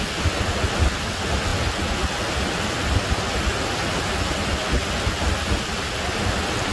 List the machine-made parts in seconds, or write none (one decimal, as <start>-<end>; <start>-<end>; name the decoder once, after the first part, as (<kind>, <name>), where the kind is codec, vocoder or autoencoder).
none